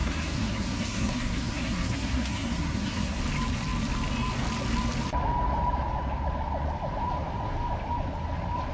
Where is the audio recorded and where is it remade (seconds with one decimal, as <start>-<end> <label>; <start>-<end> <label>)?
0.0-3.2 remade; 3.2-8.7 recorded